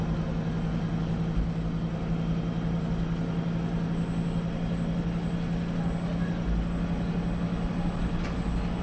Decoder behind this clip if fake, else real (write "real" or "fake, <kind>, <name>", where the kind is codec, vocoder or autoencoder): real